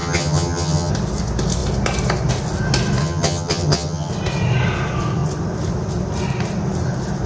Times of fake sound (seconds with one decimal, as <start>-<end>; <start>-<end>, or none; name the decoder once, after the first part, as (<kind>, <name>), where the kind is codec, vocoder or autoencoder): 0.0-0.9 (vocoder, HiFi-GAN); 3.0-4.1